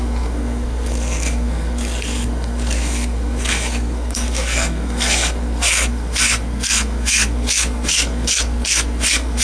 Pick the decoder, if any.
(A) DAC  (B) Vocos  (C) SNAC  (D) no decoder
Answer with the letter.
C